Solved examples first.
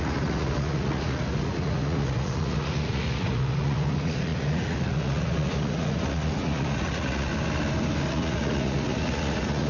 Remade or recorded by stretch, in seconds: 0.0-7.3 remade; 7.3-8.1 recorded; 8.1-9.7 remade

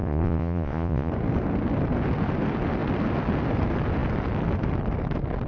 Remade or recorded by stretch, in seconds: 0.0-1.1 remade; 1.1-5.5 recorded

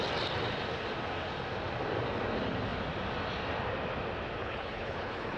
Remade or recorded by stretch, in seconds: 0.0-4.4 recorded; 4.4-5.4 remade

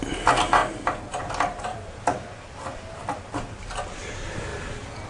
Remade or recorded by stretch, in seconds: 0.0-0.6 recorded; 0.6-1.2 remade; 1.2-1.7 recorded; 1.7-3.6 remade; 3.6-4.5 recorded; 4.5-5.1 remade

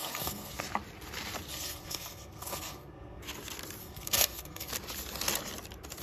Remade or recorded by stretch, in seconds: 0.0-0.6 remade; 0.6-1.5 recorded; 1.5-3.2 remade; 3.2-3.8 recorded; 3.8-4.7 remade; 4.7-6.0 recorded

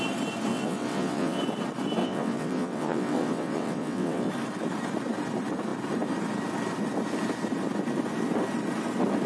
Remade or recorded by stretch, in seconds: 0.0-0.5 recorded; 0.5-1.4 remade; 1.4-2.0 recorded; 2.0-4.3 remade; 4.3-9.3 recorded

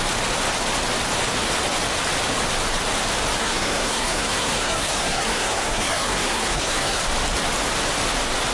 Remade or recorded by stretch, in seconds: 0.0-3.4 recorded; 3.4-7.0 remade; 7.0-8.5 recorded

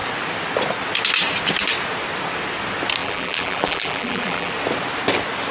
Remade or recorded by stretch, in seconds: 0.0-3.0 recorded; 3.0-4.5 remade; 4.5-5.5 recorded